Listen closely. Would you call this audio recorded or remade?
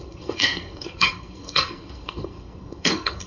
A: remade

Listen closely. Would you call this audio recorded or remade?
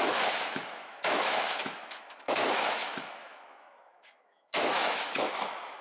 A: remade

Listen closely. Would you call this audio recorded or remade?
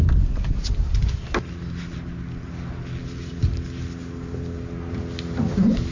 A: recorded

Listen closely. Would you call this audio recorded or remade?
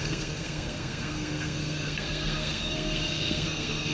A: remade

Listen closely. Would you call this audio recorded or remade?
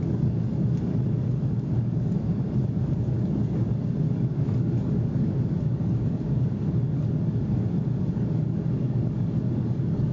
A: remade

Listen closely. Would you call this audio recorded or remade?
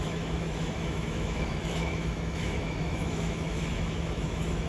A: remade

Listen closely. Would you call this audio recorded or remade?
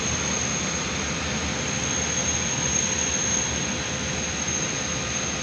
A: recorded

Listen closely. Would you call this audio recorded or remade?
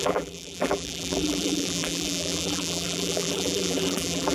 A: remade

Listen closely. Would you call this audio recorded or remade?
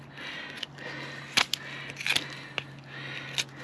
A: recorded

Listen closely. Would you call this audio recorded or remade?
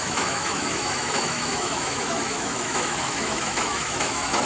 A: remade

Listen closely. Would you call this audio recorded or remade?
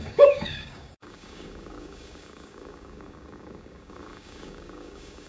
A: remade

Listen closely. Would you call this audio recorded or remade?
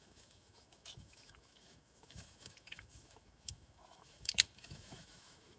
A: remade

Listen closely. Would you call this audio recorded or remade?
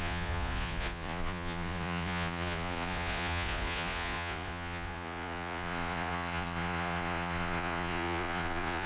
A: remade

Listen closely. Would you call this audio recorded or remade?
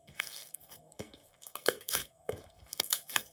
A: remade